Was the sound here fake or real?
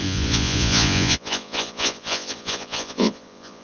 fake